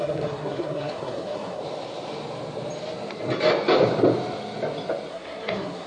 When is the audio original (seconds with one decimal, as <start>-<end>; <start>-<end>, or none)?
1.6-5.1